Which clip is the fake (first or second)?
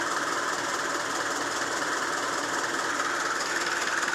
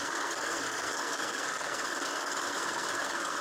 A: second